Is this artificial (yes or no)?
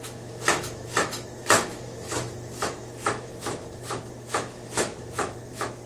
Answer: yes